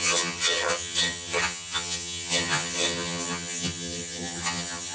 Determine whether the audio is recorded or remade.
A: remade